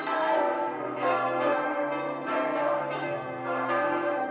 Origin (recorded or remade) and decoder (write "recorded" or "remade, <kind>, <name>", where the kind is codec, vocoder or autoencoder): remade, codec, SNAC